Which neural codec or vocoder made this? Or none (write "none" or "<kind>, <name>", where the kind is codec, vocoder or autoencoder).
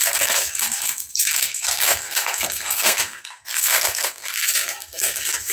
codec, SNAC